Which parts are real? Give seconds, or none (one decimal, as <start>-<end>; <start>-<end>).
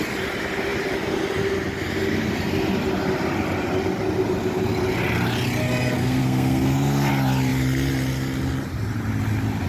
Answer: 0.0-6.0; 7.1-9.7